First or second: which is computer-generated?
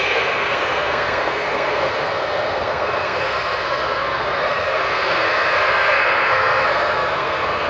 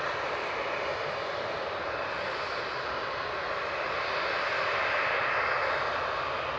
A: first